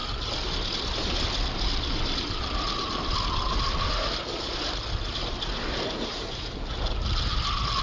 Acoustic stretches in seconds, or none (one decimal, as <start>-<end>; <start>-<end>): 0.0-7.8